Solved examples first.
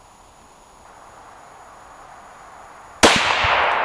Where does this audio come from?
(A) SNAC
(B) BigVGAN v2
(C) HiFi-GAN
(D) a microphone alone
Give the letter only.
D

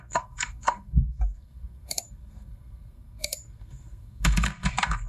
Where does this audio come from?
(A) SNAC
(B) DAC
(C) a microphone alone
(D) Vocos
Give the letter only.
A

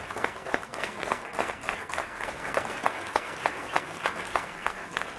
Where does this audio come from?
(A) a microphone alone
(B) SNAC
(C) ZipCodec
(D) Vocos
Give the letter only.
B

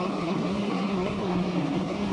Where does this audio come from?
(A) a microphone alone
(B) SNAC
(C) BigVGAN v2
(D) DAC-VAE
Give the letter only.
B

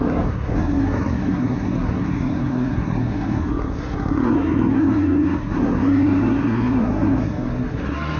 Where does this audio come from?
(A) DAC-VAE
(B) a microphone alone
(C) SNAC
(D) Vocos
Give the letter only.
C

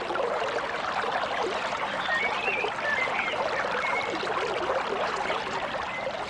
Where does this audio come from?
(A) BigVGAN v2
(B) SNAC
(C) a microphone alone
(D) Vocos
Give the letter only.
C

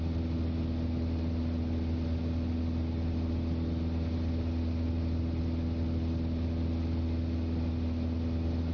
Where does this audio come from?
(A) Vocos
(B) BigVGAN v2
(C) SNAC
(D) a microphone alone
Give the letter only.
D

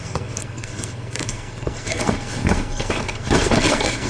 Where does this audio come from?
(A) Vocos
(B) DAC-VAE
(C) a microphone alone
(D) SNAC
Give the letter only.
D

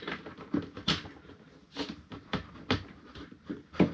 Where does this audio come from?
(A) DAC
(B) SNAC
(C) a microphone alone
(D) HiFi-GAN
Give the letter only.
C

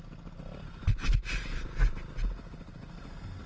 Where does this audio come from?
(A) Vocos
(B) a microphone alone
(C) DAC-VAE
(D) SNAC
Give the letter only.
B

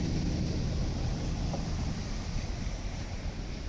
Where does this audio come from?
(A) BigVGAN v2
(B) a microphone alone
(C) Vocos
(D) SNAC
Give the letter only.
B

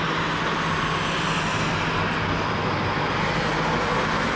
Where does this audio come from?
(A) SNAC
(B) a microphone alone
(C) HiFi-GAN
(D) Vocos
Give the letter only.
B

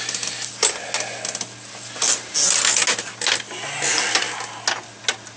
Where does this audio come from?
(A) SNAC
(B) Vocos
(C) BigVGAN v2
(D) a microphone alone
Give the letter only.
D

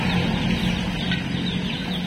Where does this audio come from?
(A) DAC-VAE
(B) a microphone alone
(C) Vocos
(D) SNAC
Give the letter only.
B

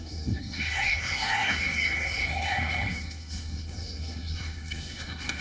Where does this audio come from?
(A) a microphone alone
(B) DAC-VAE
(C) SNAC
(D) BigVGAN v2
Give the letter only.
C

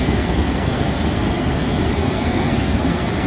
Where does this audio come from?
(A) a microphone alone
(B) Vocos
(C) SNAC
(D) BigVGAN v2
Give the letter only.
C